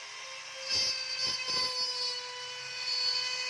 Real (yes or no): yes